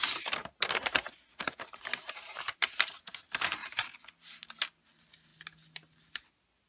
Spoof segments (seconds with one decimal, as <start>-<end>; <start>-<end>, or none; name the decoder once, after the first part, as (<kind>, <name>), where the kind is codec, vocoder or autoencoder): 0.4-3.2 (vocoder, BigVGAN v2); 3.6-4.1